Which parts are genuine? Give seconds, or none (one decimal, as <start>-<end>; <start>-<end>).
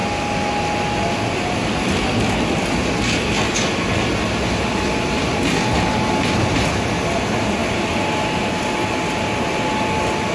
0.0-10.3